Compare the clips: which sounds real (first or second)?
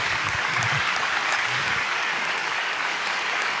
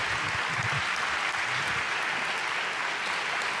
second